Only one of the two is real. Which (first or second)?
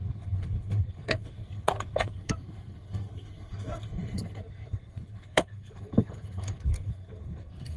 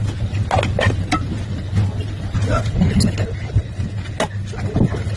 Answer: second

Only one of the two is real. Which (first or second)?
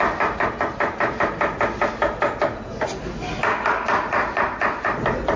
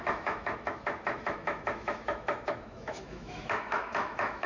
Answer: first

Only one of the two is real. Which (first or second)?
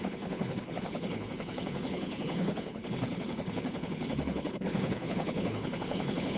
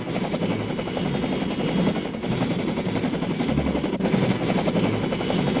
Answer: second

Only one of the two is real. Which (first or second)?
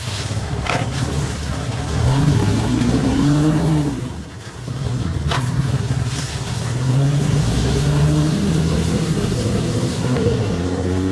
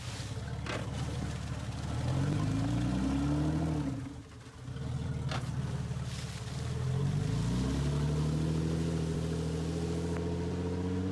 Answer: second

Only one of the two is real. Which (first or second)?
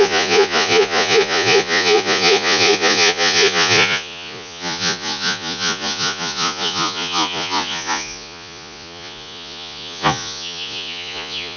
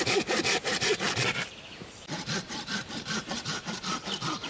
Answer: second